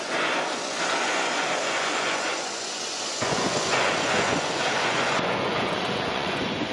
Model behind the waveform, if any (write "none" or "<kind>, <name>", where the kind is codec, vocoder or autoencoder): vocoder, Vocos